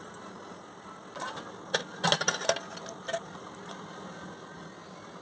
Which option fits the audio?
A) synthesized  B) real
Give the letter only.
B